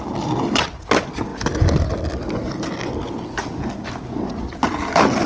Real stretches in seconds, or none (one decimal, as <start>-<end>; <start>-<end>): 0.0-5.3